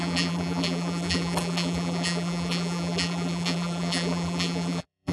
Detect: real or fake fake